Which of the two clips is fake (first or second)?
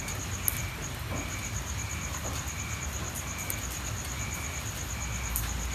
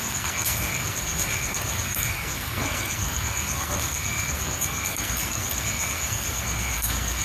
second